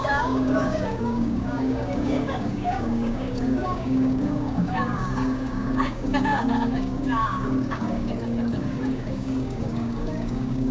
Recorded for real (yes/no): no